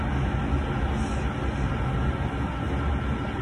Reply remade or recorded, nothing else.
recorded